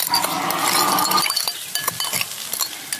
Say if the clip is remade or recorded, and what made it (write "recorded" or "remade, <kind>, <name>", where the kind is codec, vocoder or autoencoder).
recorded